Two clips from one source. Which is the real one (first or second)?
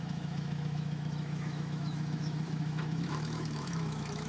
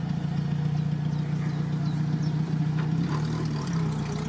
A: second